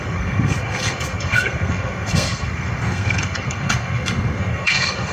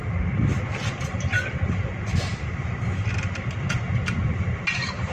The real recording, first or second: second